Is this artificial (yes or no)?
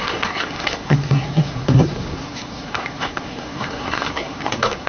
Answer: yes